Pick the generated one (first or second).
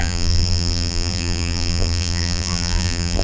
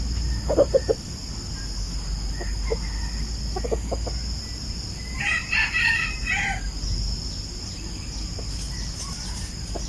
first